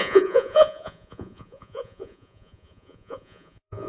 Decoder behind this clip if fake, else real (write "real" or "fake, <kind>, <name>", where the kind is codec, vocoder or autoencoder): fake, vocoder, Vocos